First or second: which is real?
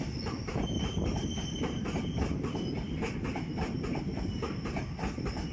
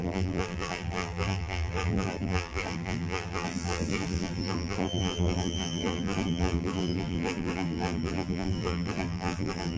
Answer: first